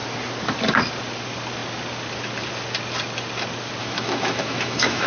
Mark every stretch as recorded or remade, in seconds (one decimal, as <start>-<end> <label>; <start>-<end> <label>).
0.0-3.8 recorded; 3.8-5.1 remade